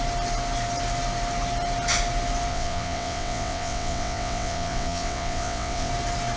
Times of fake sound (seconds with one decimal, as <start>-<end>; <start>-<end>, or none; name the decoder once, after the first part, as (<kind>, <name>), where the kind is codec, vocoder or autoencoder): 2.5-5.9 (vocoder, WaveNeXt)

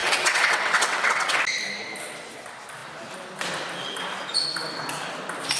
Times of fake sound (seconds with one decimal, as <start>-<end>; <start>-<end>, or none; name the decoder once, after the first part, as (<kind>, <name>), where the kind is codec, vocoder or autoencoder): 0.0-1.4 (vocoder, WaveNeXt)

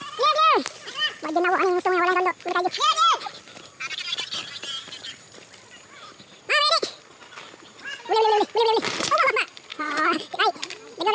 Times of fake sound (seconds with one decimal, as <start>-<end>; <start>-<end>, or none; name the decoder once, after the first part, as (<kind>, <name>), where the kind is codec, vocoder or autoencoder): 9.7-10.4 (vocoder, WaveNeXt)

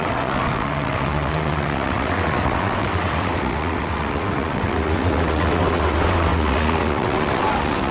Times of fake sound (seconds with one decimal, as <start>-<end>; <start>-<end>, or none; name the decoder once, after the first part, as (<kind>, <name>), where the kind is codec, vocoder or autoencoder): 0.0-7.9 (vocoder, WaveNeXt)

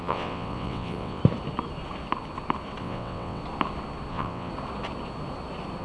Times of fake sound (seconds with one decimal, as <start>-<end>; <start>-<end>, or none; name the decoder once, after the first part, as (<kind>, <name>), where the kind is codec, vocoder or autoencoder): 0.0-1.2 (vocoder, WaveNeXt); 2.8-3.4; 4.1-4.5